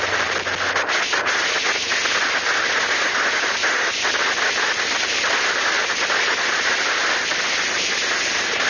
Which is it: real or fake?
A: real